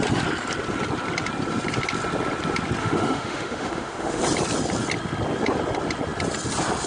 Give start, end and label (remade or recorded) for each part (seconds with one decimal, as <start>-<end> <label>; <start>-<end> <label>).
0.0-2.8 recorded; 2.8-4.2 remade; 4.2-6.9 recorded